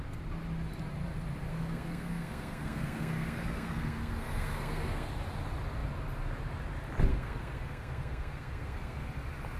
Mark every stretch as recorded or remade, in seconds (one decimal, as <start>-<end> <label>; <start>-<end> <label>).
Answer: 0.0-1.5 recorded; 1.5-5.1 remade; 5.1-7.1 recorded; 7.1-9.0 remade; 9.0-9.6 recorded